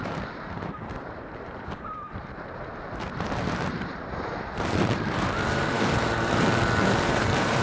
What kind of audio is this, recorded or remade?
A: remade